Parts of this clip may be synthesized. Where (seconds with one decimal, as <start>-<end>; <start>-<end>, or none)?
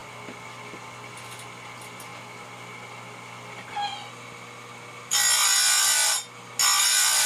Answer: none